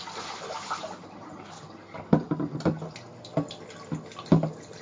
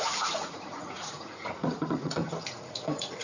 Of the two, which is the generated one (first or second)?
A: second